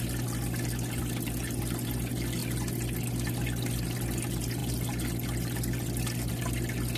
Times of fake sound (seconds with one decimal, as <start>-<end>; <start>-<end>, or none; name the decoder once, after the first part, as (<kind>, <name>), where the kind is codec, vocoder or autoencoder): none